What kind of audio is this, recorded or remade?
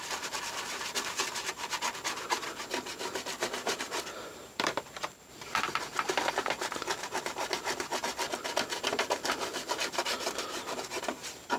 remade